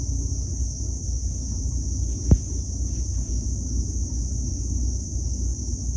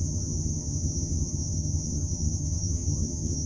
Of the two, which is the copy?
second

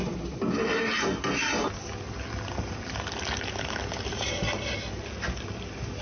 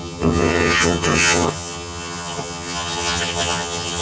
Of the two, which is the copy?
second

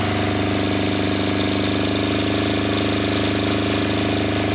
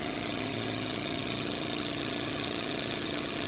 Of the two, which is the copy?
second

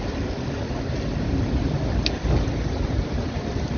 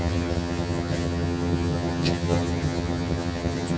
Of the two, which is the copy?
second